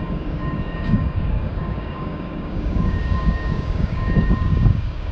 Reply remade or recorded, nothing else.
remade